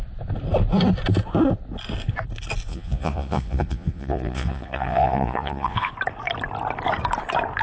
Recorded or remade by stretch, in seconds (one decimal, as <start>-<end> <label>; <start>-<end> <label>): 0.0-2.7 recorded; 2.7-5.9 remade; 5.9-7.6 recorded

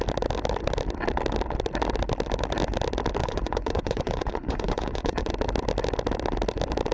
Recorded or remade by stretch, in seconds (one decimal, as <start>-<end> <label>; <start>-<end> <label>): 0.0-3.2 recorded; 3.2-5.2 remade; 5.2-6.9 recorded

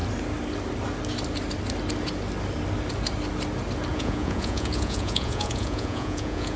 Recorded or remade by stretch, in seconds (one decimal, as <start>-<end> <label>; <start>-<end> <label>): 0.0-3.9 recorded; 3.9-6.6 remade